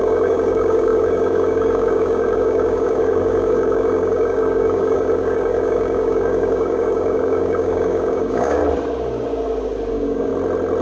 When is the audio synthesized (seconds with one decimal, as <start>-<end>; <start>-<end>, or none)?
0.0-8.6; 9.9-10.3